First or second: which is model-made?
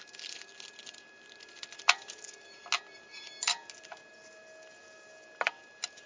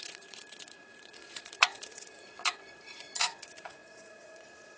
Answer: second